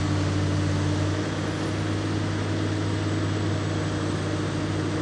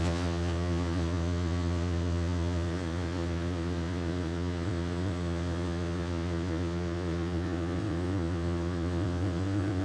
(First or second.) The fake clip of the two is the second